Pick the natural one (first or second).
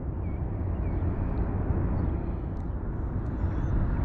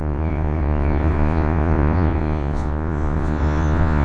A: first